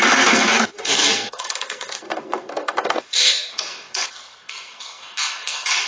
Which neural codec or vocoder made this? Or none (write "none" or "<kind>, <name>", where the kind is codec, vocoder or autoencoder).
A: codec, SNAC